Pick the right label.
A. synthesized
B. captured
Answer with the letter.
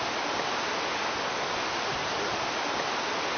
B